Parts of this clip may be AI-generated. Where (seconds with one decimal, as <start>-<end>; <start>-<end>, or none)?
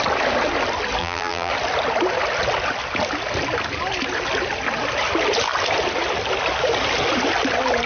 1.0-1.5